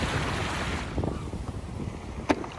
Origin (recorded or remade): remade